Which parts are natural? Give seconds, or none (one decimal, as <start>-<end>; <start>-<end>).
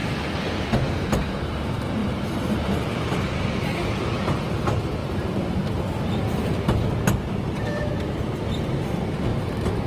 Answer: 0.0-2.0; 3.4-5.0; 6.0-9.3